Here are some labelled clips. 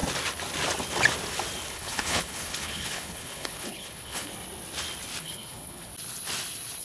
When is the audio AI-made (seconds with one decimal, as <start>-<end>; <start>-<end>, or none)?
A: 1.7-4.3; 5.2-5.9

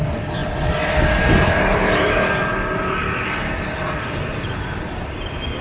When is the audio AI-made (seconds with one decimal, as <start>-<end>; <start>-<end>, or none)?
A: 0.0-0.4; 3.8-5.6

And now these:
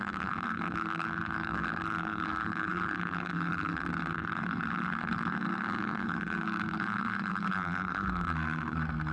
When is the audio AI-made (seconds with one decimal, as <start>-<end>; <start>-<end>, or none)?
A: 0.0-9.1

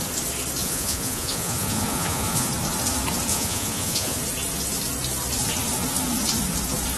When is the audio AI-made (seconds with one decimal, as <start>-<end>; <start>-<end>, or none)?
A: 0.6-2.5; 3.3-4.2

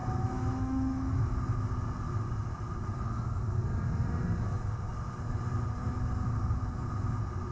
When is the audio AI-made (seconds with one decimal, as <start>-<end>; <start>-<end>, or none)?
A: 0.0-1.4